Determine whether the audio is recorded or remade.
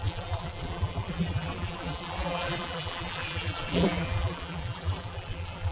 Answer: remade